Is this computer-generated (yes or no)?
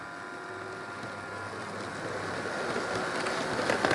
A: no